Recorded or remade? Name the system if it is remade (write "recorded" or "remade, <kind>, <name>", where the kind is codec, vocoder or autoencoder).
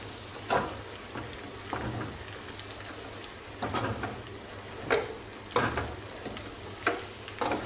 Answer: recorded